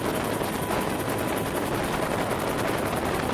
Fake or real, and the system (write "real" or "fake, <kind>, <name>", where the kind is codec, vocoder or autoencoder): real